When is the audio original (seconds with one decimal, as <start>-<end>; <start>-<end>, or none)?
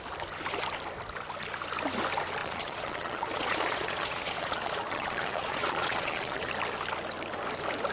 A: 0.0-2.4; 6.5-7.9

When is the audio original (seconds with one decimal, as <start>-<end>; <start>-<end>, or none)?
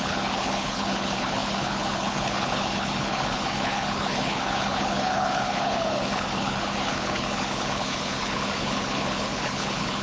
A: none